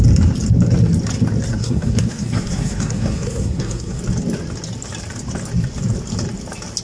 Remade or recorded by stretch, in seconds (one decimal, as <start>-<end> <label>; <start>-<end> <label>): 0.0-1.5 recorded; 1.5-4.0 remade; 4.0-6.8 recorded